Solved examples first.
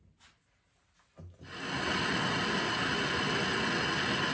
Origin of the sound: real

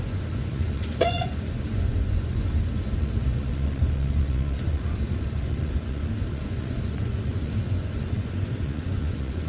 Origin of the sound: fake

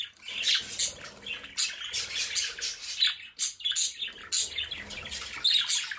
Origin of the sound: real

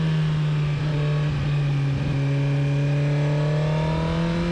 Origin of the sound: real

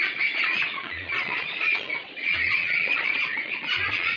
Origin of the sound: fake